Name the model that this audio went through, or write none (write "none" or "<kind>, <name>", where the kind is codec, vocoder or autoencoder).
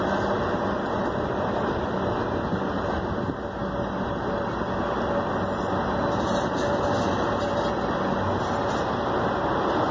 none